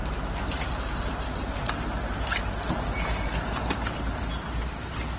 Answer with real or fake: fake